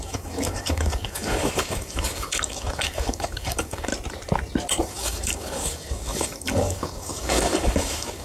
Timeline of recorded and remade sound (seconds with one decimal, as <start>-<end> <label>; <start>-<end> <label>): 0.0-3.9 remade; 3.9-4.8 recorded; 4.8-8.2 remade

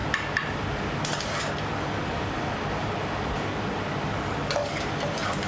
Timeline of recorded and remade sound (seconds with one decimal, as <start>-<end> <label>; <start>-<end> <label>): 0.0-4.1 recorded; 4.1-4.9 remade; 4.9-5.5 recorded